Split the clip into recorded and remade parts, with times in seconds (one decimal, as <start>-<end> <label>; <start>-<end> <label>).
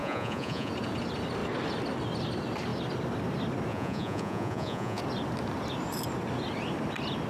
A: 0.0-0.7 remade; 0.7-3.7 recorded; 3.7-5.0 remade; 5.0-7.3 recorded